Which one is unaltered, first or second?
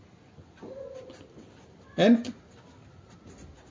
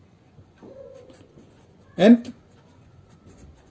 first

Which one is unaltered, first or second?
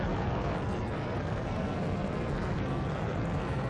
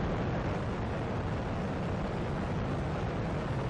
second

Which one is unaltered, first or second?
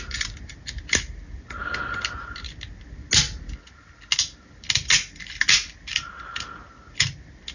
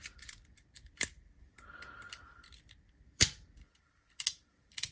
first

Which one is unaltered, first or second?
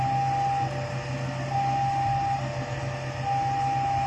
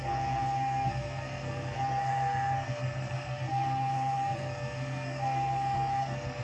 first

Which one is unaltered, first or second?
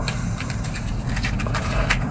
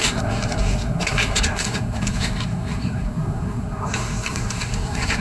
first